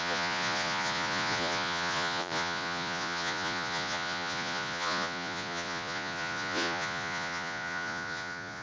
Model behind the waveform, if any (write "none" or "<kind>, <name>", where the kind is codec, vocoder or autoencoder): vocoder, Vocos